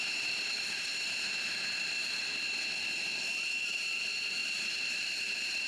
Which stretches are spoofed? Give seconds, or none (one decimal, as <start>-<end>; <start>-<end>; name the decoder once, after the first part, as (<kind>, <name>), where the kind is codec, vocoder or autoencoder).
4.4-5.1 (vocoder, BigVGAN v2)